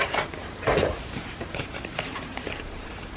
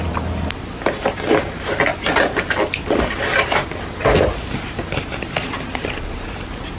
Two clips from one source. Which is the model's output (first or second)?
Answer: first